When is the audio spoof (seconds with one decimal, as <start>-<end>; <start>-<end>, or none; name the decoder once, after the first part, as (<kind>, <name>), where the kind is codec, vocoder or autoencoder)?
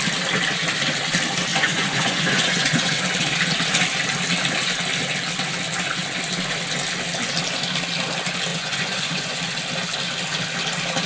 1.5-3.0 (vocoder, Vocos); 8.5-9.4